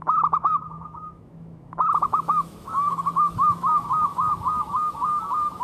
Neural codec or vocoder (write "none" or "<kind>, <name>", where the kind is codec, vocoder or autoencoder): autoencoder, DAC-VAE